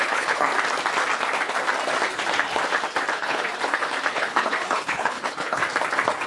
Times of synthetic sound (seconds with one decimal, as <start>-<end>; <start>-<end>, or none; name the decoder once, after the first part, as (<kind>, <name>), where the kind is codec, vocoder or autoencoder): 0.0-0.5 (codec, HILCodec); 3.1-3.5; 4.1-5.6